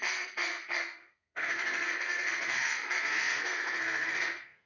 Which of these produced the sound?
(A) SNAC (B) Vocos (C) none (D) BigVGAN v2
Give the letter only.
A